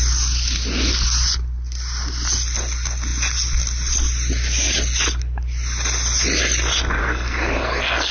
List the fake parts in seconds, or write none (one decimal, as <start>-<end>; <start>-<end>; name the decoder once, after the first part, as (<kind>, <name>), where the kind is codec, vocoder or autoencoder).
7.0-8.1 (codec, SNAC)